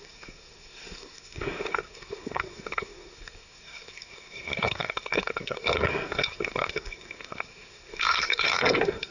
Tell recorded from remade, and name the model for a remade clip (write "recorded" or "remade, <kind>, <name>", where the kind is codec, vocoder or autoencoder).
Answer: remade, codec, SNAC